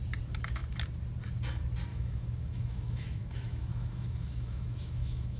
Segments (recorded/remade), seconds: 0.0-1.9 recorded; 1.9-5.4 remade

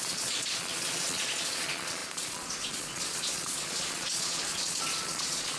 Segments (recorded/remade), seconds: 0.0-5.6 remade

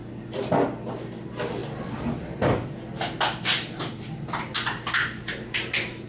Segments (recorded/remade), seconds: 0.0-6.1 recorded

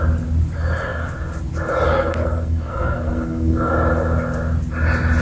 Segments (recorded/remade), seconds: 0.0-1.9 recorded; 1.9-3.7 remade; 3.7-5.2 recorded

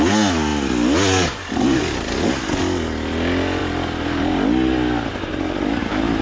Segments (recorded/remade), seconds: 0.0-6.2 recorded